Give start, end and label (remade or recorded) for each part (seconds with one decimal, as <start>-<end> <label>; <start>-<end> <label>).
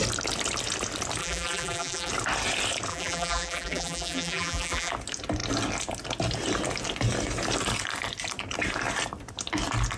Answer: 0.0-1.2 recorded; 1.2-2.1 remade; 2.1-2.9 recorded; 2.9-4.9 remade; 4.9-10.0 recorded